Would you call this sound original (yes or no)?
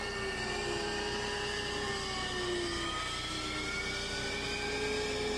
yes